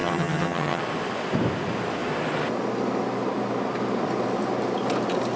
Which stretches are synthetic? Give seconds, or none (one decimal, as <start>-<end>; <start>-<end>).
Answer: 0.0-0.8